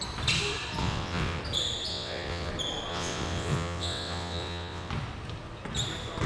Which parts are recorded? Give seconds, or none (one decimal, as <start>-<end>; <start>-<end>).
0.0-0.8; 1.4-1.9; 2.5-2.9; 4.9-6.3